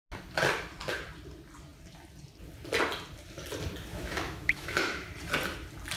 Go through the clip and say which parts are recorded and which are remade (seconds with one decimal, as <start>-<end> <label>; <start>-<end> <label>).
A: 0.0-3.9 recorded; 3.9-5.1 remade; 5.1-6.0 recorded